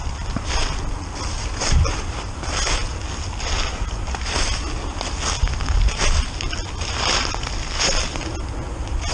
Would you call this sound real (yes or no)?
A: yes